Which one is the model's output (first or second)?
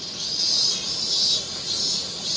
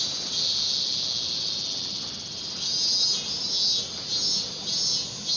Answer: first